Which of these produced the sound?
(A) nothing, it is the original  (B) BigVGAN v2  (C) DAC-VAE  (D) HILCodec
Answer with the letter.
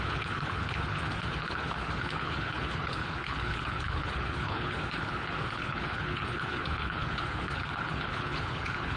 D